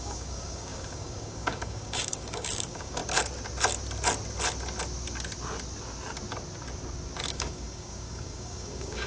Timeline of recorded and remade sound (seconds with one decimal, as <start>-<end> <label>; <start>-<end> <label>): 0.0-3.0 remade; 3.0-7.3 recorded; 7.3-9.1 remade